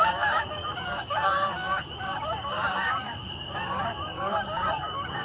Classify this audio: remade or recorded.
remade